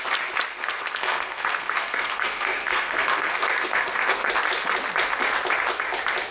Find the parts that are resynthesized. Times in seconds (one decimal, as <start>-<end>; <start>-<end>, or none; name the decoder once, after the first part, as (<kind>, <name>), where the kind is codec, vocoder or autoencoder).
0.5-4.3 (codec, SNAC)